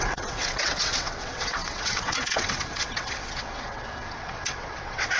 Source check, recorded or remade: remade